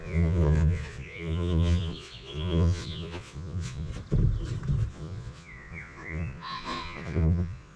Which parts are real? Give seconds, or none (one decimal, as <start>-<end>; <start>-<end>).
3.9-4.9